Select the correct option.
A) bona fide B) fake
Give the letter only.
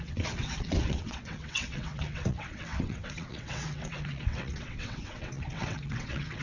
B